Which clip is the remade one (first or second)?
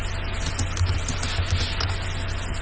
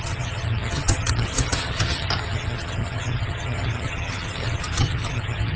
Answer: second